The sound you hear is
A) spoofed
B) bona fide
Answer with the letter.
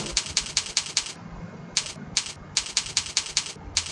B